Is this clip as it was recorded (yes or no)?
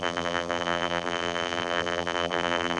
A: no